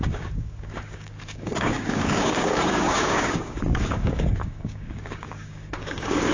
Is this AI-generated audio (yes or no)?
yes